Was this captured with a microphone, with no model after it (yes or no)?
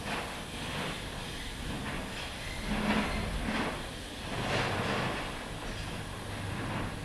yes